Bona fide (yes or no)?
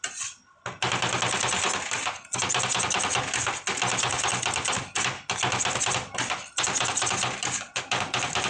yes